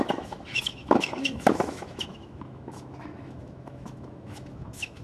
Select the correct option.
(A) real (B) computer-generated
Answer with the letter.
B